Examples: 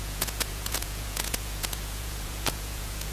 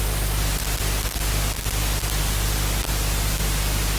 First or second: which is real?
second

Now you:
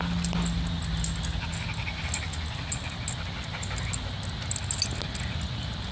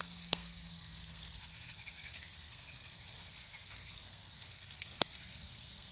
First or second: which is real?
first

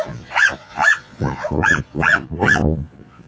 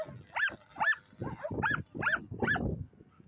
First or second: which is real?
second